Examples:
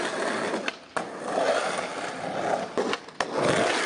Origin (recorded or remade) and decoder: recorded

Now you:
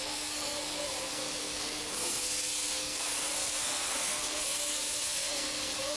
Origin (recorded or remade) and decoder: remade, codec, SNAC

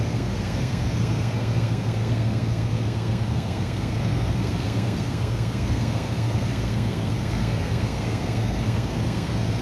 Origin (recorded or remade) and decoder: remade, codec, SNAC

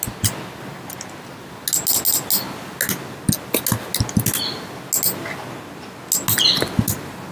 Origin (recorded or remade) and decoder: recorded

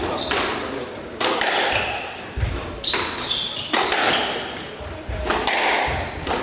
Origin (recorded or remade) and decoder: recorded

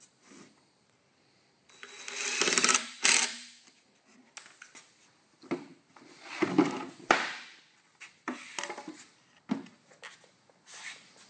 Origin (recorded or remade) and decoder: recorded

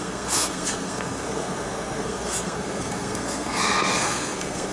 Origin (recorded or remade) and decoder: remade, codec, SNAC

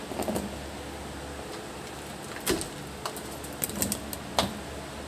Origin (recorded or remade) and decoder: recorded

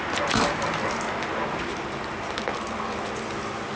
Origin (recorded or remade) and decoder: recorded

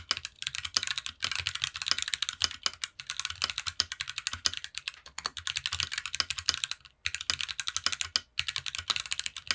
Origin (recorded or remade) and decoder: recorded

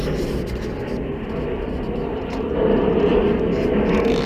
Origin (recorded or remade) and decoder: recorded